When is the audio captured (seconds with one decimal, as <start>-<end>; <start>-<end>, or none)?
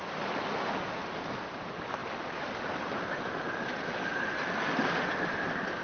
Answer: 0.0-5.8